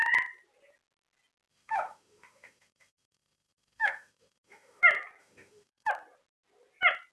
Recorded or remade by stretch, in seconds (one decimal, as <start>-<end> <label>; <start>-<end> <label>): 0.0-1.5 recorded; 1.5-4.8 remade; 4.8-5.2 recorded; 5.2-5.9 remade; 5.9-7.1 recorded